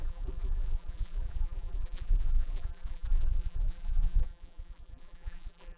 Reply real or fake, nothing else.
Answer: fake